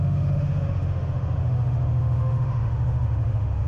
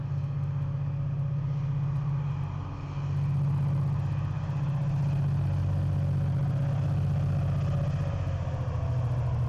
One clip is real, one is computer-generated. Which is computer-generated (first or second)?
first